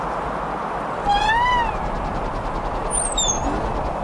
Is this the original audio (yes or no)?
yes